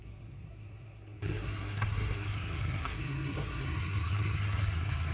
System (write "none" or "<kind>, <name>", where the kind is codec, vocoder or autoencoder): codec, SNAC